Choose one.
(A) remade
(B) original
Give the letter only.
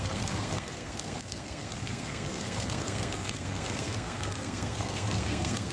A